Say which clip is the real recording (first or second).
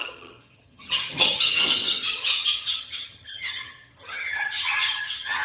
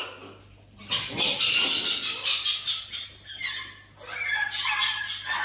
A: second